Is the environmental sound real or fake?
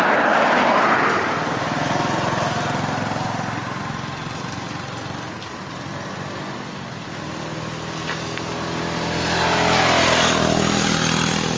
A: real